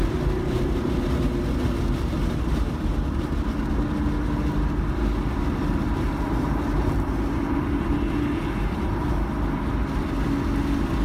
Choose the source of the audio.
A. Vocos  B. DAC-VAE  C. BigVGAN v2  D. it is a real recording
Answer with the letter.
D